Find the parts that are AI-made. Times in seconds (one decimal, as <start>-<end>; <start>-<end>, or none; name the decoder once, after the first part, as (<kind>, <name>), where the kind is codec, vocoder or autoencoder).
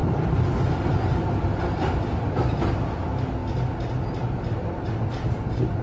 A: none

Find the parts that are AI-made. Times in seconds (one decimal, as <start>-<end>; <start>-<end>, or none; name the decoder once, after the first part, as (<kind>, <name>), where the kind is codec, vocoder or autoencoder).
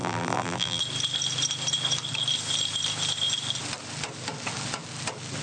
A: 0.0-0.8 (vocoder, BigVGAN v2)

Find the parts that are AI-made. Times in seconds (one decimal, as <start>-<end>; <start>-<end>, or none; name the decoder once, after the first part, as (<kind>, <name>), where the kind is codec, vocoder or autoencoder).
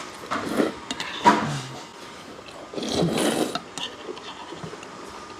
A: 4.4-5.0 (vocoder, BigVGAN v2)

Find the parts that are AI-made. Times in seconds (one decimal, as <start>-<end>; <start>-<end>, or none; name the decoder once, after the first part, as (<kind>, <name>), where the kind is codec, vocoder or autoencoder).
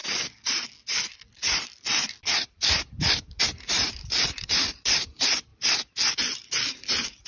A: 2.3-7.3 (vocoder, BigVGAN v2)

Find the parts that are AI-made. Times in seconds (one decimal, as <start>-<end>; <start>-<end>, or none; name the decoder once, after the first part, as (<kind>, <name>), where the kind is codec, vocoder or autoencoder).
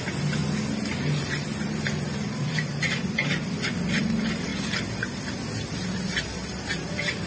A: 0.0-0.4 (vocoder, BigVGAN v2); 0.9-4.5; 5.7-7.3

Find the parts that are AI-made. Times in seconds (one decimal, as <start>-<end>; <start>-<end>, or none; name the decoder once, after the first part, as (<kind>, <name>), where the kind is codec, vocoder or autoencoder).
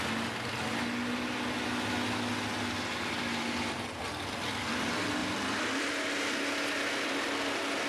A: 5.2-6.9 (vocoder, BigVGAN v2)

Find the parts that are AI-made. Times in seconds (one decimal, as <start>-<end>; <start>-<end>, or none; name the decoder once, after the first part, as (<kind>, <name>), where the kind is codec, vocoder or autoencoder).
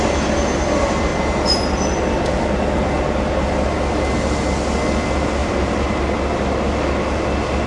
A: 5.4-6.0 (vocoder, BigVGAN v2)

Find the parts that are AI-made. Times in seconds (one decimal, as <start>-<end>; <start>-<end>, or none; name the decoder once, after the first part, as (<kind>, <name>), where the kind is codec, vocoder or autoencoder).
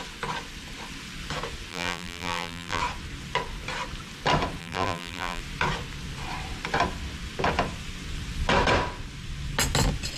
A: 1.7-2.8 (vocoder, BigVGAN v2); 4.6-5.4